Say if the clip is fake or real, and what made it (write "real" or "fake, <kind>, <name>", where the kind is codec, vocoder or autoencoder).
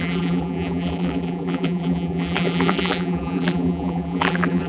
fake, vocoder, BigVGAN v2